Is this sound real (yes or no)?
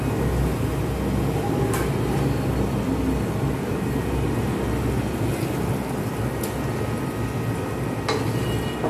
yes